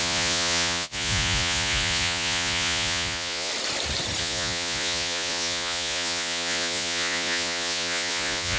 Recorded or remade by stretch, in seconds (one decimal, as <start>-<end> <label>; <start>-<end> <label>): 0.0-3.5 remade; 3.5-4.2 recorded; 4.2-8.6 remade